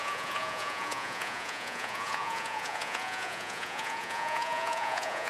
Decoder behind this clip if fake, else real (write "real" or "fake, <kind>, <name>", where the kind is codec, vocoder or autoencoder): fake, vocoder, Vocos